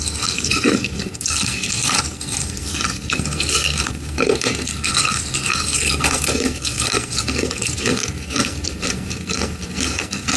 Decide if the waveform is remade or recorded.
remade